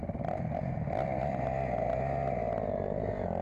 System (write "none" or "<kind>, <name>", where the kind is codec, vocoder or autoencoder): none